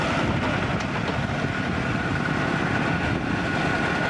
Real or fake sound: fake